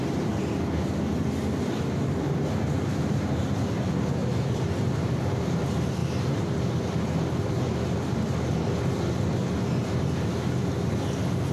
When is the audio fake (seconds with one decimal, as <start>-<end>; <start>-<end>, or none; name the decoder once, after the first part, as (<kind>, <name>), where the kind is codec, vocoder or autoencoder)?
4.2-5.2 (vocoder, BigVGAN v2); 6.0-8.8